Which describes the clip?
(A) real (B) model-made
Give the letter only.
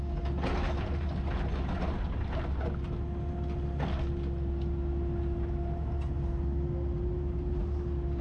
A